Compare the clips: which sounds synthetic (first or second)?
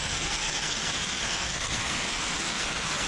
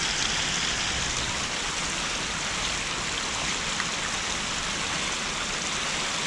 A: first